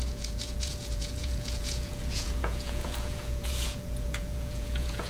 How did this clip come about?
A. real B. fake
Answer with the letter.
B